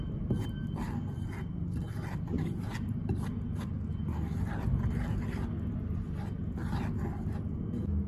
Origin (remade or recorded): recorded